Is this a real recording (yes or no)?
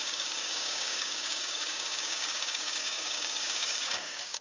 no